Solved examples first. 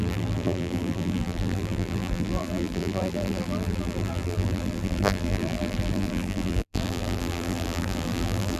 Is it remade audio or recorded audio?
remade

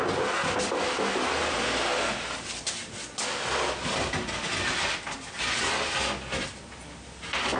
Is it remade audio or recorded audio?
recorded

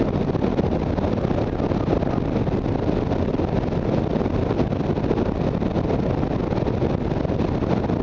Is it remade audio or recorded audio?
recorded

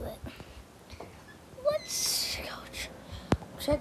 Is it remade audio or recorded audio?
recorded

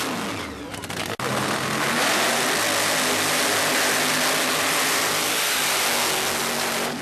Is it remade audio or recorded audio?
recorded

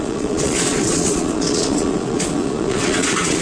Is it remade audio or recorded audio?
remade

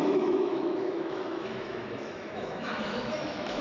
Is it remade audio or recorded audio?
remade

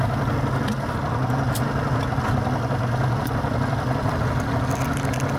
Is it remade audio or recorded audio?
recorded